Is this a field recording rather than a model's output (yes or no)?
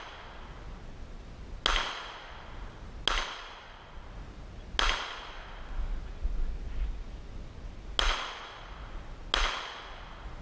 yes